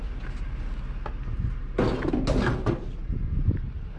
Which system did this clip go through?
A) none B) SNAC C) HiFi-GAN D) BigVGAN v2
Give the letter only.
A